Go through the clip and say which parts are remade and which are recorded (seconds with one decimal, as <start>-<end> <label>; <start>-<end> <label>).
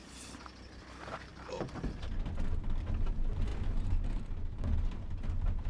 0.0-5.7 recorded